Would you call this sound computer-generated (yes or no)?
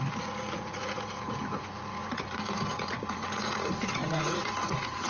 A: yes